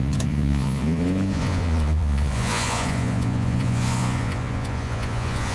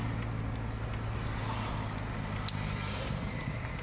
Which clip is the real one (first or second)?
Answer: second